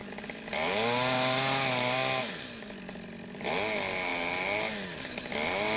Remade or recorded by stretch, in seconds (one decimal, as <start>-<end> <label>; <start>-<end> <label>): 0.0-5.8 recorded